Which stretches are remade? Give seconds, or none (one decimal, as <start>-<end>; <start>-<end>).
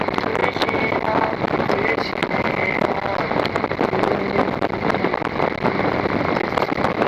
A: none